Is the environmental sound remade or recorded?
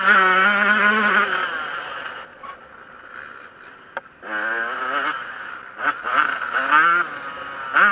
recorded